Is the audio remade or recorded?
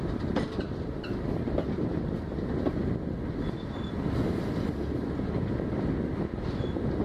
recorded